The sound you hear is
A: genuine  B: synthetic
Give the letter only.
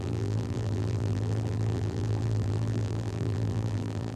B